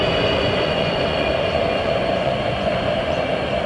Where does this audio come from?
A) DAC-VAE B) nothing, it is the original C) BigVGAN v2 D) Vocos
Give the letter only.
D